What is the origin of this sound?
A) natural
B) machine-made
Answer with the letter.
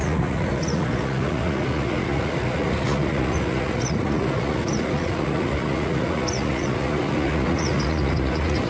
B